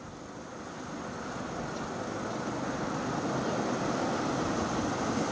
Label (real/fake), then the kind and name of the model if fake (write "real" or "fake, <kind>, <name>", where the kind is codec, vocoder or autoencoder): real